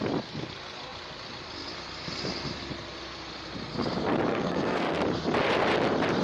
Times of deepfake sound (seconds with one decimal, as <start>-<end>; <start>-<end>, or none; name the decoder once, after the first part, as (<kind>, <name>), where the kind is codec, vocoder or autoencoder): 4.3-5.0 (codec, SNAC)